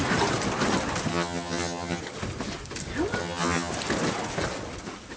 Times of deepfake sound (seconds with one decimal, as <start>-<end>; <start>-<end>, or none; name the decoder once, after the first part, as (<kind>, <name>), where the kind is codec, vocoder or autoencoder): 1.1-2.0 (vocoder, HiFi-GAN); 3.2-3.7